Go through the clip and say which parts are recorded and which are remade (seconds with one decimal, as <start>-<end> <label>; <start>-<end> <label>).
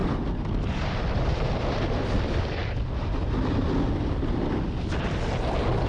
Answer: 0.0-1.1 recorded; 1.1-2.6 remade; 2.6-5.9 recorded